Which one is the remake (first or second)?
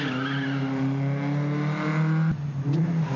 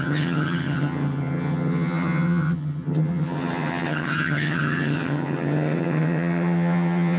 second